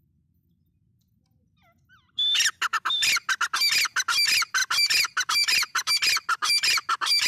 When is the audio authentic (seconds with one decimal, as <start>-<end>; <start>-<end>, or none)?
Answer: 0.0-4.6; 5.9-7.3